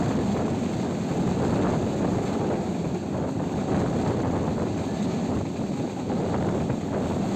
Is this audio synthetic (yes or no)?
no